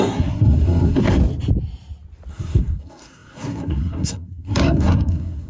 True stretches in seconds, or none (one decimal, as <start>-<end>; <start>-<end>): 1.2-2.3